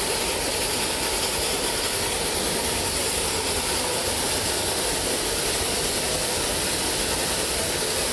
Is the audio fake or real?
real